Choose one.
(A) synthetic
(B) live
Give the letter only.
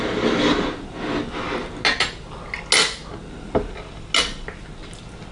B